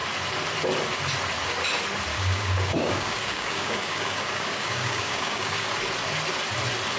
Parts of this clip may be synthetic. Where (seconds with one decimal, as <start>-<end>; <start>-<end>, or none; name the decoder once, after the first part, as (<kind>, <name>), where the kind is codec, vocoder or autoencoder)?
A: 2.1-5.7 (codec, DAC)